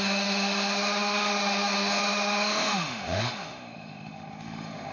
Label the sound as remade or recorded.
remade